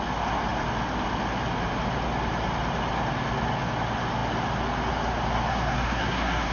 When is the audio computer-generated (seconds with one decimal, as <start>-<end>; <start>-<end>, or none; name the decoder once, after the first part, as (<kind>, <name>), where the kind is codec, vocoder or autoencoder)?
5.5-6.5 (codec, SNAC)